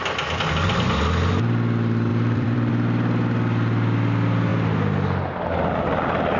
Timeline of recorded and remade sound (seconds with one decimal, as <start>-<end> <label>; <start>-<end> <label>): 0.0-2.1 recorded; 2.1-2.7 remade; 2.7-6.4 recorded